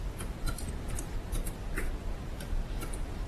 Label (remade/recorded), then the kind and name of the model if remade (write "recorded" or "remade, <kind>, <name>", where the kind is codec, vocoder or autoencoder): remade, vocoder, BigVGAN v2